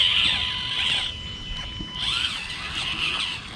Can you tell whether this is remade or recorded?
recorded